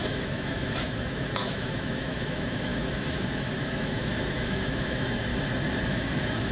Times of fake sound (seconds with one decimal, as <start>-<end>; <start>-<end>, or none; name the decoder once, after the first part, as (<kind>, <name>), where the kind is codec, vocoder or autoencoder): 0.0-5.3 (autoencoder, DAC-VAE); 5.9-6.5